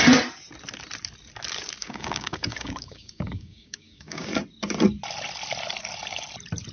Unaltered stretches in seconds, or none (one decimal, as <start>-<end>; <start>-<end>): 0.0-1.8; 4.3-6.7